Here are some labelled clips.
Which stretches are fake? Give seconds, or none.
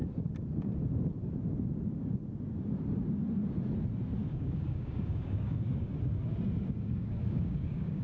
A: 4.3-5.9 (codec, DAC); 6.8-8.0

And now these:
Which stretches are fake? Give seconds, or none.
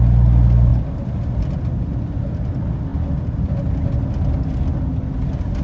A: none